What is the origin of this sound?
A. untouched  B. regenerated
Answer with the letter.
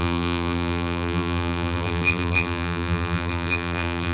B